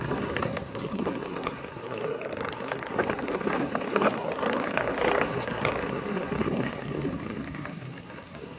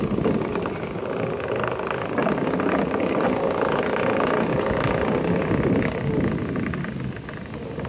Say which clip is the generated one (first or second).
first